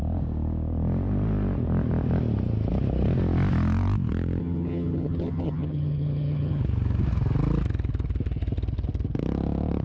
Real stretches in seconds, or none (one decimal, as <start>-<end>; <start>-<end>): 0.0-4.4; 6.6-9.8